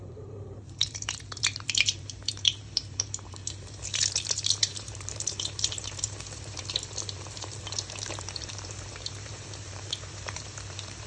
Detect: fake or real fake